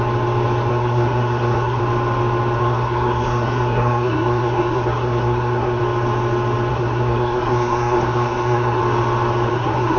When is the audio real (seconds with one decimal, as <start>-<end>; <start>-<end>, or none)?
0.0-0.7; 1.8-2.6; 5.8-6.7; 8.8-9.5